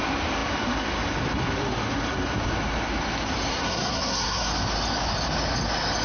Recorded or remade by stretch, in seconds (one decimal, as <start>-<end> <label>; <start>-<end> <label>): 0.0-3.5 recorded; 3.5-4.5 remade; 4.5-6.0 recorded